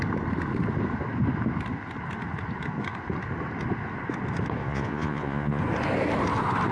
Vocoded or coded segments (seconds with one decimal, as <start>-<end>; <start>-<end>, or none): 4.6-5.6